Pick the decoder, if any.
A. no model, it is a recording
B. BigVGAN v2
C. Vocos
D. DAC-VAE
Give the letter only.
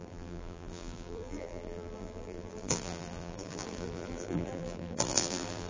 B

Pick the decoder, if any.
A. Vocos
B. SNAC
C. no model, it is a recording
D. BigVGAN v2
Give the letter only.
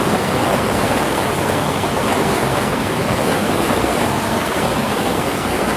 B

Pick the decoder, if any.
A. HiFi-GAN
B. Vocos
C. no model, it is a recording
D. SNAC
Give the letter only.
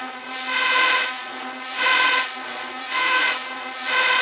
B